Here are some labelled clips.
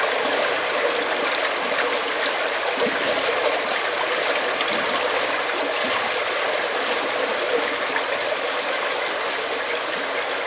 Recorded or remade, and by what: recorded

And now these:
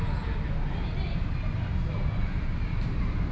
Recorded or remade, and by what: recorded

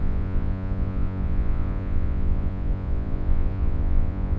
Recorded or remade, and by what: remade, vocoder, Vocos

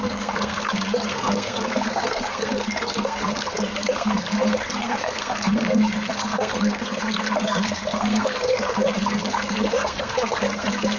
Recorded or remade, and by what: remade, codec, SNAC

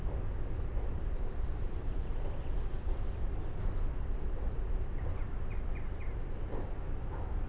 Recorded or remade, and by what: recorded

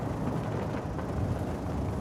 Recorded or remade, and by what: recorded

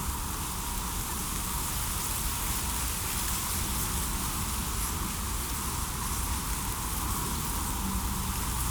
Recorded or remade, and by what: recorded